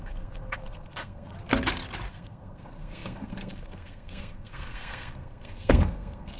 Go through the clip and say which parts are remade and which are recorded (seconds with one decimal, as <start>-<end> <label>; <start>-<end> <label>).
0.0-1.3 remade; 1.3-2.1 recorded; 2.1-6.4 remade